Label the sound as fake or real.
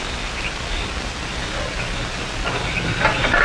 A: real